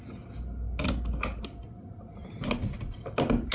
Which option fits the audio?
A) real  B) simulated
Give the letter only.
A